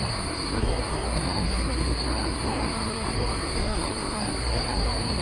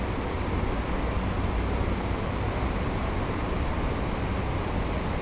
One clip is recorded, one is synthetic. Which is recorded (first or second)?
second